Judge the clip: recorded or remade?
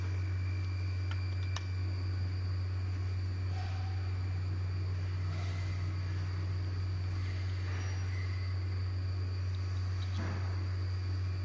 recorded